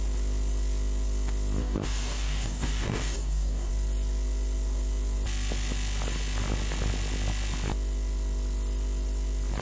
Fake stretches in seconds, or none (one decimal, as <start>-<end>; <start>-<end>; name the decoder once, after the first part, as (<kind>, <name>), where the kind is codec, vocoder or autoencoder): 1.6-3.7 (codec, DAC)